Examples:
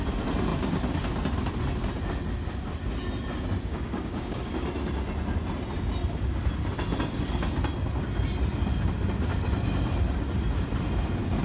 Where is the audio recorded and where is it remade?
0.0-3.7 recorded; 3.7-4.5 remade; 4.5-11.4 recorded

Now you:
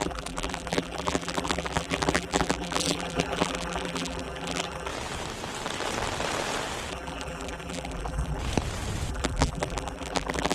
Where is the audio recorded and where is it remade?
0.0-4.9 remade; 4.9-6.9 recorded; 6.9-8.4 remade; 8.4-9.1 recorded; 9.1-10.5 remade